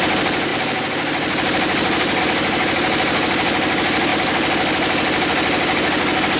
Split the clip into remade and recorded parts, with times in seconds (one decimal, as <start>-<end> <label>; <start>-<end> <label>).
0.0-6.4 recorded